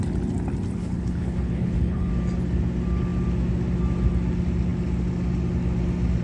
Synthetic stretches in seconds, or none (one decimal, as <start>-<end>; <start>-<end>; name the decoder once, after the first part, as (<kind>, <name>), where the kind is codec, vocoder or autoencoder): 0.8-2.1 (codec, HILCodec)